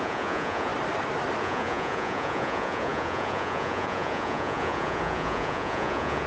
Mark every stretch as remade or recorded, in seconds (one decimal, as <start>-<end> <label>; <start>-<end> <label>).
0.0-0.7 remade; 0.7-1.4 recorded; 1.4-6.3 remade